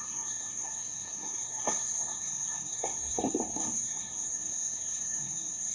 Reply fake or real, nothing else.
fake